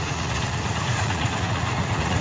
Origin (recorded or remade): remade